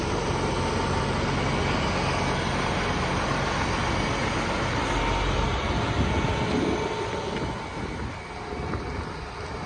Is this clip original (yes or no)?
yes